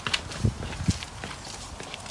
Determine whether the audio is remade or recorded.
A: recorded